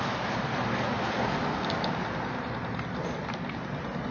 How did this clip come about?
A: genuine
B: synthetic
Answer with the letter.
A